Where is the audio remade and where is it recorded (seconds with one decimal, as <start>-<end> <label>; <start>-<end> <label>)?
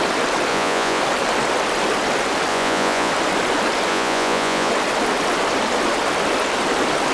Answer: 0.0-0.5 recorded; 0.5-1.0 remade; 1.0-2.5 recorded; 2.5-3.1 remade; 3.1-3.9 recorded; 3.9-4.7 remade; 4.7-7.1 recorded